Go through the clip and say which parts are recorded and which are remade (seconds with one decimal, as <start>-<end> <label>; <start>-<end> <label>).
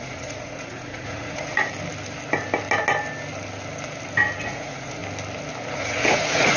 0.0-1.6 remade; 1.6-4.4 recorded; 4.4-5.0 remade; 5.0-5.7 recorded; 5.7-6.6 remade